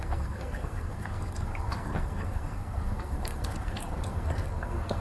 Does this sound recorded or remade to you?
remade